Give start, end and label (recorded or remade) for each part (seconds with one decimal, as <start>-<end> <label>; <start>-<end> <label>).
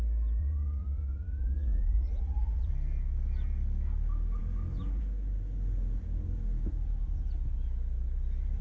0.0-0.4 recorded; 0.4-2.7 remade; 2.7-8.6 recorded